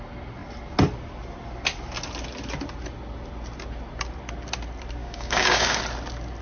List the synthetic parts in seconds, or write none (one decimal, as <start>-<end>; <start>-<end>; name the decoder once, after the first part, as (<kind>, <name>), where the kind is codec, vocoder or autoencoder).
5.0-5.8 (codec, DAC)